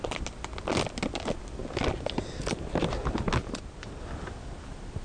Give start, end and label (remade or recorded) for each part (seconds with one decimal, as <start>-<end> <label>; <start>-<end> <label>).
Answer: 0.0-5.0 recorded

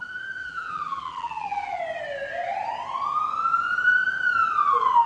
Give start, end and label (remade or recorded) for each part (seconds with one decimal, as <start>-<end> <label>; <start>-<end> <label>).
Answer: 0.0-0.4 recorded; 0.4-1.8 remade; 1.8-5.1 recorded

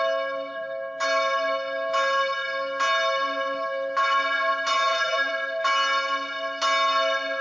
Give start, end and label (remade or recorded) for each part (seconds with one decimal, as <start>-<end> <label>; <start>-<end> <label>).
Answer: 0.0-4.7 recorded; 4.7-5.3 remade; 5.3-7.4 recorded